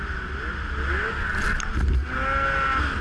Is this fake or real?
real